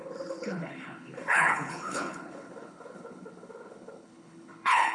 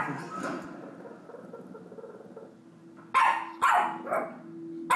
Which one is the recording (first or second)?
second